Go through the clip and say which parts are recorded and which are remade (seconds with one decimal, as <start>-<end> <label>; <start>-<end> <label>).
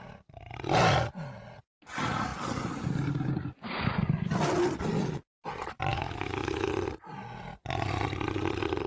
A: 0.0-5.9 recorded; 5.9-6.7 remade; 6.7-8.9 recorded